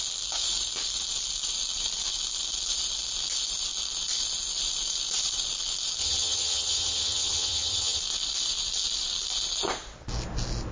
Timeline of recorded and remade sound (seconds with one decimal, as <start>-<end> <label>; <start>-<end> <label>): 0.0-6.0 recorded; 6.0-8.0 remade; 8.0-10.7 recorded